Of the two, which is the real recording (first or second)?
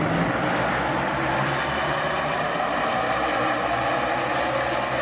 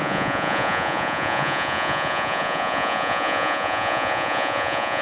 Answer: first